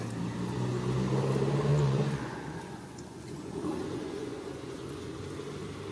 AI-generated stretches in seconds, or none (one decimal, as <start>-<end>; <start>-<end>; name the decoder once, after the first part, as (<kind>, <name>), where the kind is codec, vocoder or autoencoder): 1.7-5.2 (vocoder, Vocos)